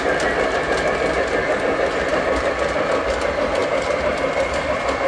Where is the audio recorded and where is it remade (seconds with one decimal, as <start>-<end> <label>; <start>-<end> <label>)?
0.0-2.1 recorded; 2.1-2.8 remade; 2.8-3.6 recorded; 3.6-5.1 remade